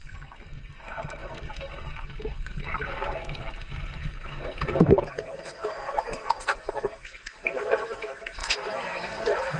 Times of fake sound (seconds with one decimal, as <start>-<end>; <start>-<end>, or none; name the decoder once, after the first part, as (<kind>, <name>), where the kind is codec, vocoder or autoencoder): 0.0-9.6 (codec, SNAC)